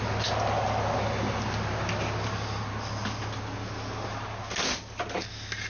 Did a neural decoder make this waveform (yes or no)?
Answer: no